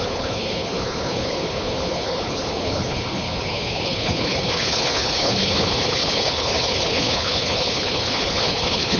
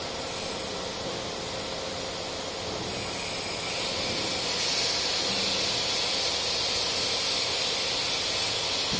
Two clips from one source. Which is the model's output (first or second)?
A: first